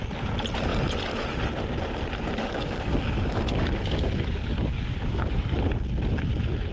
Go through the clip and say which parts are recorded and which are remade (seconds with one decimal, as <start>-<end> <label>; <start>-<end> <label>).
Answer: 0.0-2.4 recorded; 2.4-5.7 remade; 5.7-6.7 recorded